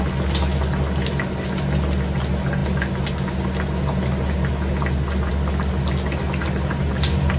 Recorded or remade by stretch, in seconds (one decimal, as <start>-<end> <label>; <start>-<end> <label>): 0.0-7.4 recorded

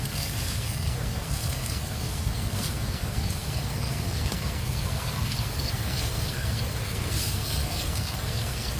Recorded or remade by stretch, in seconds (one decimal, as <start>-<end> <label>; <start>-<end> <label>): 0.0-8.8 remade

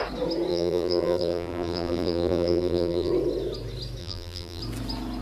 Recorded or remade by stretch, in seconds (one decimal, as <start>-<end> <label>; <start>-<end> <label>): 0.0-0.5 recorded; 0.5-3.1 remade; 3.1-4.0 recorded; 4.0-4.6 remade; 4.6-5.2 recorded